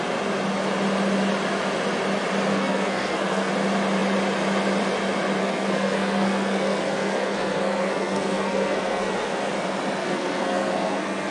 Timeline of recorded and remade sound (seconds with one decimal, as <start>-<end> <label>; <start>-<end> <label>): 0.0-2.5 recorded; 2.5-3.5 remade; 3.5-5.4 recorded; 5.4-9.5 remade; 9.5-10.0 recorded; 10.0-11.3 remade